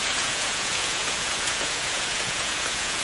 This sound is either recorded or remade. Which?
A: remade